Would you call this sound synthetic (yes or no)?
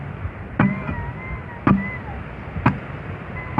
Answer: no